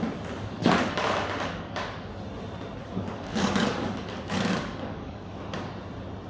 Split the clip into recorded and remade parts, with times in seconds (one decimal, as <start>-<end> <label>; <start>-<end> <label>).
0.0-0.6 recorded; 0.6-2.1 remade; 2.1-2.8 recorded; 2.8-5.4 remade; 5.4-6.3 recorded